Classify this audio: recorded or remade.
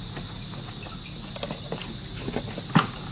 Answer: recorded